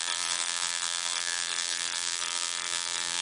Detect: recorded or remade remade